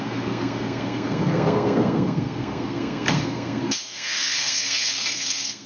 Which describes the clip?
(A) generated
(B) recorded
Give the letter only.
A